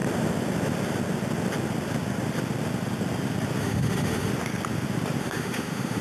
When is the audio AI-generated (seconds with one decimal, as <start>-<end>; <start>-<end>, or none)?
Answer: 3.6-4.3; 5.2-6.0